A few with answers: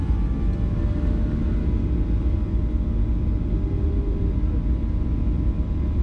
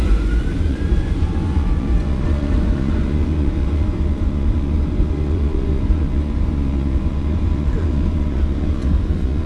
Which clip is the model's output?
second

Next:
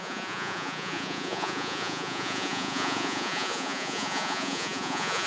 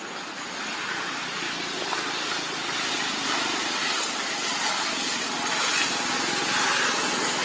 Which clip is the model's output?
first